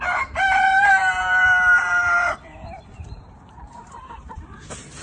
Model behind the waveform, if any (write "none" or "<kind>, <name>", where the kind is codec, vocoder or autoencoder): vocoder, BigVGAN v2